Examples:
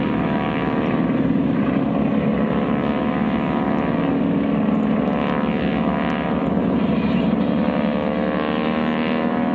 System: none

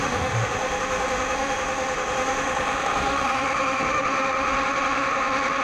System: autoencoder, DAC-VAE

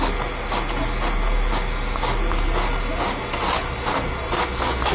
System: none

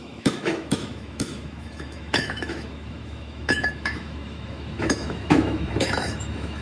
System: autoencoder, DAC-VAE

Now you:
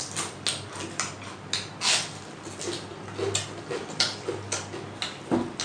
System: none